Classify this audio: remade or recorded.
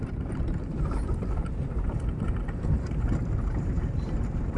remade